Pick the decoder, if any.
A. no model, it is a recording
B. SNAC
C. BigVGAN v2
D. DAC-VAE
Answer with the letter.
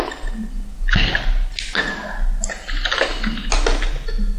A